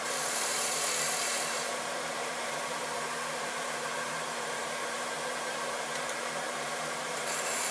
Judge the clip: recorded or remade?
remade